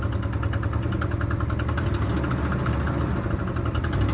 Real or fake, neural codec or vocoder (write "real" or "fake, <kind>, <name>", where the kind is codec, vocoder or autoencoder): real